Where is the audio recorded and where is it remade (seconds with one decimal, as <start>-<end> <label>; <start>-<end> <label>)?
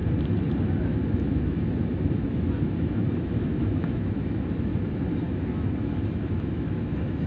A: 0.0-0.8 recorded; 0.8-4.7 remade; 4.7-5.4 recorded; 5.4-7.3 remade